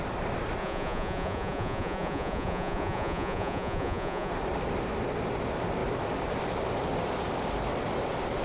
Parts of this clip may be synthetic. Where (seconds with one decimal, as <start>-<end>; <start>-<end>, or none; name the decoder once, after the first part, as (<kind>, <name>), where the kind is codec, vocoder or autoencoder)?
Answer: 0.6-4.3 (vocoder, Vocos)